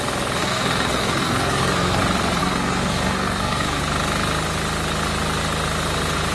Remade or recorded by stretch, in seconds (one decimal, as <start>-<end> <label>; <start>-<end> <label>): 0.0-0.4 recorded; 0.4-2.0 remade; 2.0-2.4 recorded; 2.4-3.8 remade; 3.8-6.3 recorded

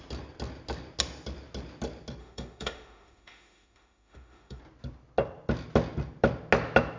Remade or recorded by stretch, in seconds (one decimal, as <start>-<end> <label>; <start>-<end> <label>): 0.0-2.2 recorded; 2.2-4.6 remade; 4.6-7.0 recorded

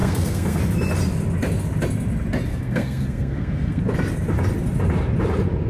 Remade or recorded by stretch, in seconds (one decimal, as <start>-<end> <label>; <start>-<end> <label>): 0.0-0.6 remade; 0.6-2.5 recorded; 2.5-3.8 remade; 3.8-5.7 recorded

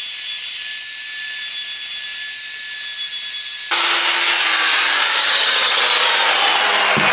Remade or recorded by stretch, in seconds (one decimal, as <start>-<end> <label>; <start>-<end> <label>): 0.0-5.2 recorded; 5.2-5.8 remade; 5.8-7.1 recorded

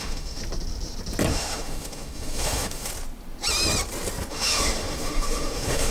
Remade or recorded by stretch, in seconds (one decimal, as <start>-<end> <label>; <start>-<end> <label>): 0.0-0.4 remade; 0.4-1.3 recorded; 1.3-2.9 remade; 2.9-4.3 recorded; 4.3-5.9 remade

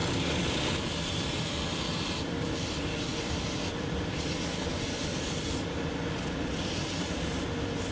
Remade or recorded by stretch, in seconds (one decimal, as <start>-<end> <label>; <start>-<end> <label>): 0.0-1.3 remade; 1.3-3.1 recorded; 3.1-5.7 remade; 5.7-7.9 recorded

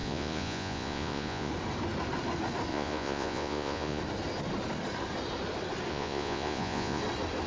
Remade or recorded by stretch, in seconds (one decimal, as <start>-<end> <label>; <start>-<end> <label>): 0.0-1.5 remade; 1.5-2.7 recorded; 2.7-4.0 remade; 4.0-5.9 recorded; 5.9-7.0 remade; 7.0-7.5 recorded

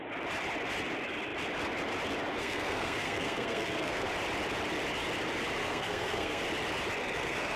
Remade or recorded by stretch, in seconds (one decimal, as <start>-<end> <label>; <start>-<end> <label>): 0.0-2.4 recorded; 2.4-4.1 remade; 4.1-5.6 recorded; 5.6-6.4 remade; 6.4-7.0 recorded; 7.0-7.6 remade